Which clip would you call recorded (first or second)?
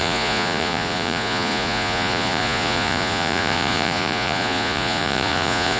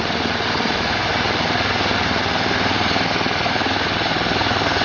second